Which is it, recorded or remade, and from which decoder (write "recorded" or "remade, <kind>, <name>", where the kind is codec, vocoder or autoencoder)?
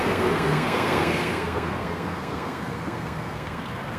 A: remade, codec, SNAC